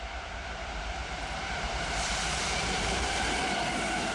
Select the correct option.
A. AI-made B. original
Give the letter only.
A